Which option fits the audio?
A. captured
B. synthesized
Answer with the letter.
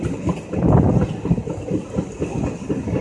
A